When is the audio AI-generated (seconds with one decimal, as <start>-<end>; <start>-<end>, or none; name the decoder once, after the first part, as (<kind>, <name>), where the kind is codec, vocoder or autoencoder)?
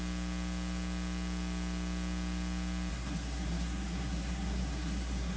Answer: 2.9-5.4 (codec, SNAC)